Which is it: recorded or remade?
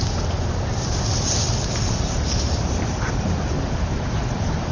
recorded